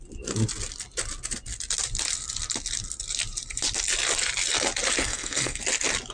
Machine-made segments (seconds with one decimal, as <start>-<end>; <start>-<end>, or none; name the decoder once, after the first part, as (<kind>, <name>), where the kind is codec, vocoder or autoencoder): 5.0-5.6 (codec, SNAC)